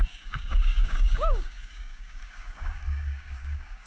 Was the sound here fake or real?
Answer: fake